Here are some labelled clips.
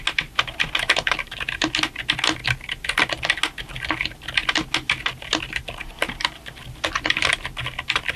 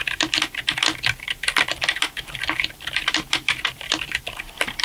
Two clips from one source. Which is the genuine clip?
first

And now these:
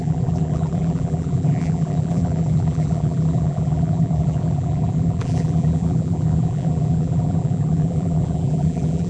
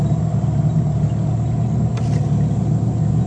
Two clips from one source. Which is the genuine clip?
second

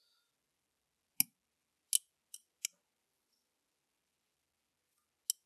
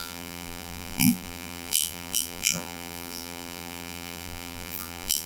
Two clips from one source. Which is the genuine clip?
first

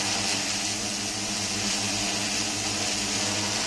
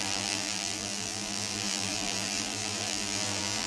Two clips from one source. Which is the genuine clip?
first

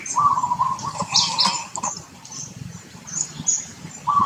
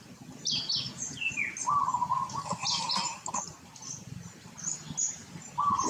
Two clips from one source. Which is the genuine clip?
second